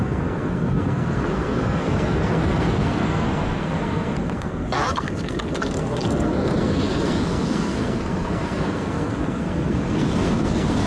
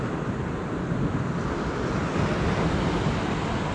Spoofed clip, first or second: first